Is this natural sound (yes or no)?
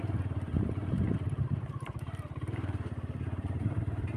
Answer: no